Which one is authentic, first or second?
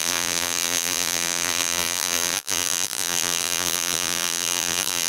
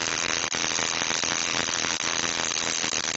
second